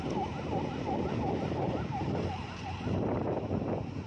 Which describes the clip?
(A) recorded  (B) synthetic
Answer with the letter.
A